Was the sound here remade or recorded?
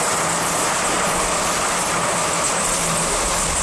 recorded